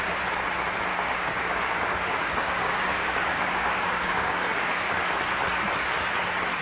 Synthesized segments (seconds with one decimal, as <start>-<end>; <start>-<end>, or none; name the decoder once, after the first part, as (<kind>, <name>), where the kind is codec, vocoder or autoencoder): 0.9-4.9 (codec, DAC)